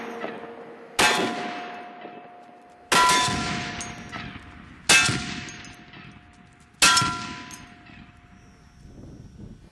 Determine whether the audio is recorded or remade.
recorded